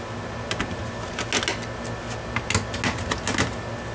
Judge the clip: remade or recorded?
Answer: recorded